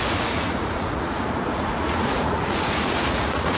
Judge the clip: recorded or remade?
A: remade